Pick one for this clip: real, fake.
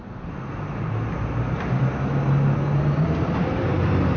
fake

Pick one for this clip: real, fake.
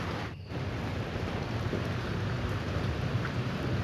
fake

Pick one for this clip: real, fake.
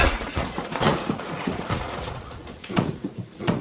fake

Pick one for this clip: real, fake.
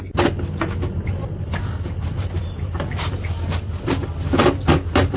real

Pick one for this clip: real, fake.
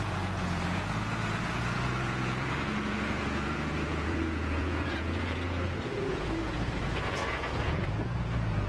fake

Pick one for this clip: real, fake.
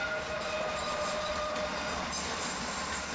real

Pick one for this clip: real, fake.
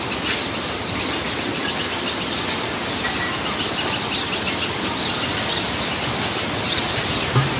real